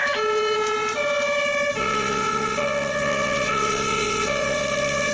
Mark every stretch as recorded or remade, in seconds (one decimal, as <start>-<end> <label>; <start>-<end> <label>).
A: 0.0-1.8 recorded; 1.8-5.1 remade